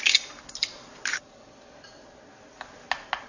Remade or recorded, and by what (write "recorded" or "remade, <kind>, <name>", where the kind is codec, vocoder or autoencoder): recorded